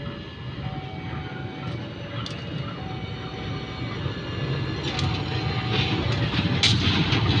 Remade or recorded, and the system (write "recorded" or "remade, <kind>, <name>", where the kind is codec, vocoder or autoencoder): recorded